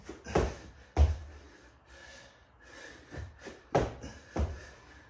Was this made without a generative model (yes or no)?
yes